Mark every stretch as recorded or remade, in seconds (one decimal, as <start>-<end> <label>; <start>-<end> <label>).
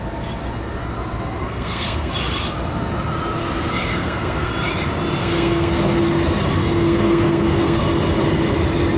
0.0-1.4 recorded; 1.4-2.1 remade; 2.1-3.9 recorded; 3.9-4.5 remade; 4.5-5.2 recorded; 5.2-6.0 remade; 6.0-6.6 recorded; 6.6-7.8 remade; 7.8-9.0 recorded